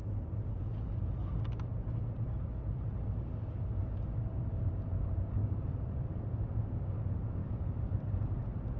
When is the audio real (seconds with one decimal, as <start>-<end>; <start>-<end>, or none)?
0.0-5.4; 6.7-7.4